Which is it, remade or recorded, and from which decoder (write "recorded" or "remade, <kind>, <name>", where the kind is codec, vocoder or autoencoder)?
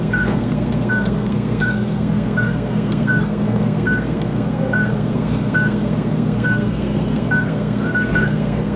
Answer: remade, codec, SNAC